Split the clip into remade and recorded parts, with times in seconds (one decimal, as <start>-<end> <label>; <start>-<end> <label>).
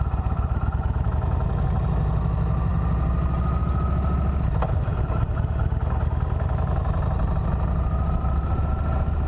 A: 0.0-9.3 recorded